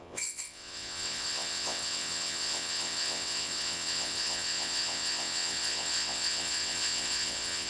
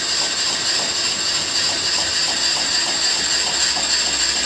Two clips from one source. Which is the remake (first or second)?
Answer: first